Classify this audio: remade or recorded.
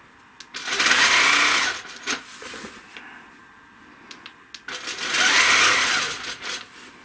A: recorded